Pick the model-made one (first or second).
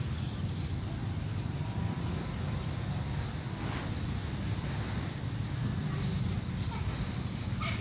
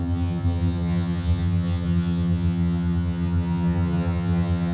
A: second